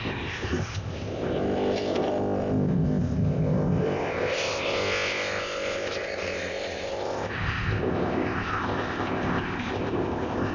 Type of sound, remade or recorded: remade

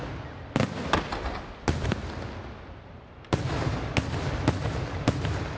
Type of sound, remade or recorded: recorded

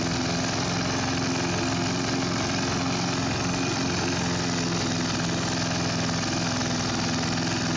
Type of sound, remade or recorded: recorded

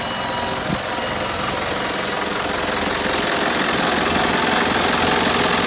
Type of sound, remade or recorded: recorded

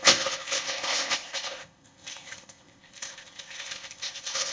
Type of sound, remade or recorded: remade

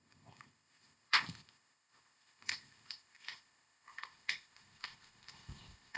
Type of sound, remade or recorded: remade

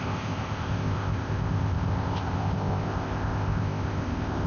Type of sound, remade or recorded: remade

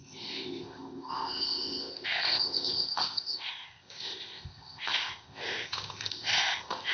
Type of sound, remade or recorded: remade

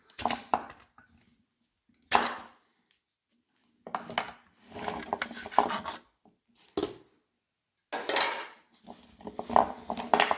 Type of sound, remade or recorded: recorded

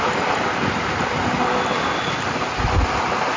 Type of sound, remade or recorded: recorded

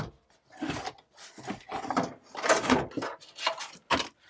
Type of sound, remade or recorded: recorded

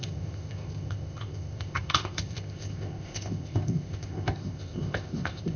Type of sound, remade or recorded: remade